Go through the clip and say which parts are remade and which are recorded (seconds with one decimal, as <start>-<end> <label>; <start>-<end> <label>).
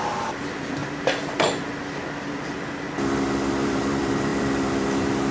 0.0-0.8 remade; 0.8-3.5 recorded; 3.5-5.3 remade